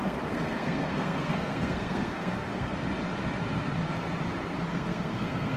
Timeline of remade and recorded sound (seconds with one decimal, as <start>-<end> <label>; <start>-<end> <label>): 0.0-2.8 remade; 2.8-4.7 recorded; 4.7-5.6 remade

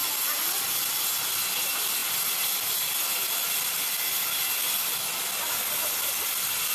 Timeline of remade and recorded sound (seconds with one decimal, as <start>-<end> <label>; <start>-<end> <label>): 0.0-6.7 recorded

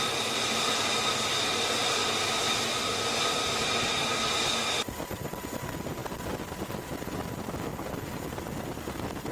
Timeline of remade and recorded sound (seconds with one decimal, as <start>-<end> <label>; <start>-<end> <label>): 0.0-9.3 recorded

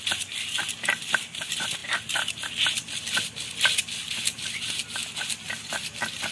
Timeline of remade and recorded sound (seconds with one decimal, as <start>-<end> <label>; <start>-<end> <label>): 0.0-6.3 recorded

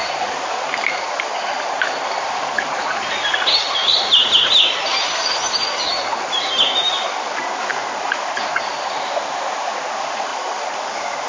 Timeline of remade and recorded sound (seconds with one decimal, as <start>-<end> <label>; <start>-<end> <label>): 0.0-4.9 recorded; 4.9-5.9 remade; 5.9-7.7 recorded; 7.7-8.3 remade; 8.3-10.3 recorded; 10.3-10.9 remade; 10.9-11.3 recorded

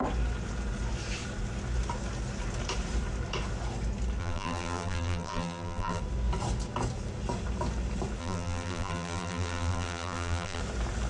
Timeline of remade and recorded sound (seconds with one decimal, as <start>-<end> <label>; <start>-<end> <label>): 0.0-4.2 recorded; 4.2-6.0 remade; 6.0-8.2 recorded; 8.2-10.6 remade; 10.6-11.1 recorded